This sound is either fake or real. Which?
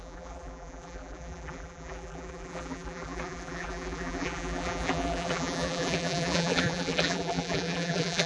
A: fake